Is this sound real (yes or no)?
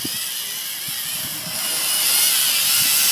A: yes